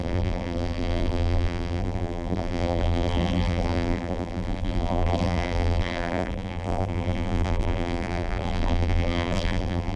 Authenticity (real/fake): fake